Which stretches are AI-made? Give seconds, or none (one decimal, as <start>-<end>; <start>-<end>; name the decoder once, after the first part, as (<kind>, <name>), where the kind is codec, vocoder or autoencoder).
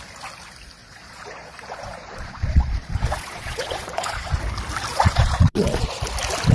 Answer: 0.8-4.4 (vocoder, Vocos); 4.9-6.0